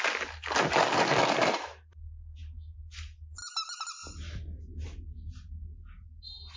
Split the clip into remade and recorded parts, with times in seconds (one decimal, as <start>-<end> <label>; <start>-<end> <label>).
0.0-6.6 recorded